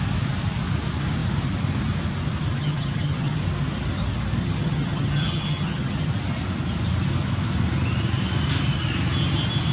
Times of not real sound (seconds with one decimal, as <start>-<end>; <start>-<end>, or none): 2.6-3.4; 4.4-6.1